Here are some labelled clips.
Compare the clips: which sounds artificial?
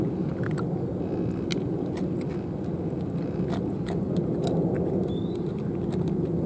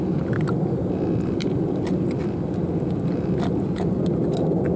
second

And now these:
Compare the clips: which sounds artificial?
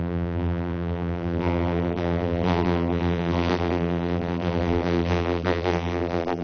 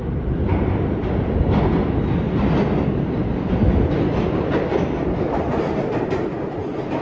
first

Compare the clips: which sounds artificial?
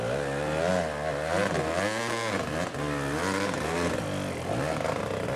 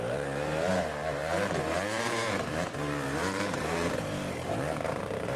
second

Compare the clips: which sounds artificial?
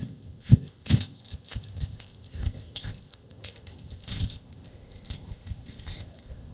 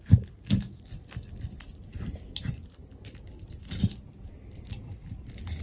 first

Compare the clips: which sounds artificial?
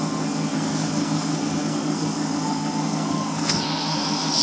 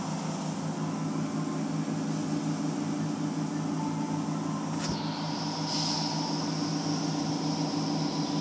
first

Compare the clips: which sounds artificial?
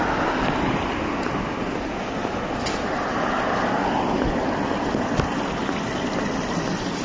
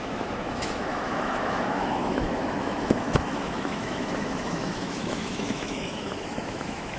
second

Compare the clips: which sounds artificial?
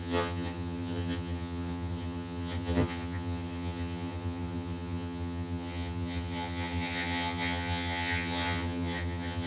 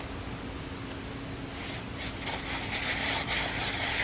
first